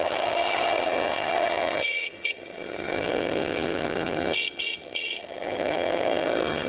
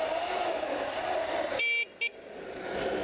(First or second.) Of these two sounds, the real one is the second